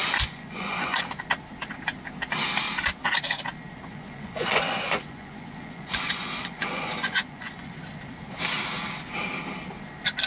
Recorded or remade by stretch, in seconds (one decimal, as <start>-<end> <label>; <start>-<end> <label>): 0.0-1.0 remade; 1.0-3.9 recorded; 3.9-7.7 remade; 7.7-10.3 recorded